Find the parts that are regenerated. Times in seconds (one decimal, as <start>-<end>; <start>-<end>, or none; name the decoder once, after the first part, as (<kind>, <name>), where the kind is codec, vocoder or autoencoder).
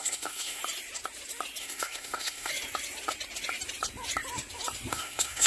0.0-0.6 (codec, SNAC); 1.6-2.5; 4.9-5.5